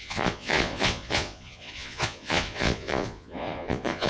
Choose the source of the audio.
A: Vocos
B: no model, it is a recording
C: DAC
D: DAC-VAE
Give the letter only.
A